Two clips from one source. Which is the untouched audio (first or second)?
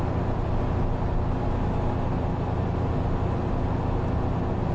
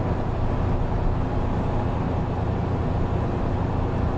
first